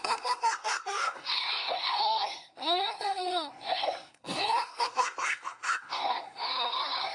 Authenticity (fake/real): fake